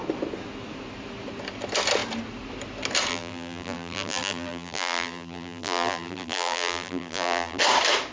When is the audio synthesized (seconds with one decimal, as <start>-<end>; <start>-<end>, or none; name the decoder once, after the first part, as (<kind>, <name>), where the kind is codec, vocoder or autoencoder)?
3.1-7.6 (vocoder, BigVGAN v2)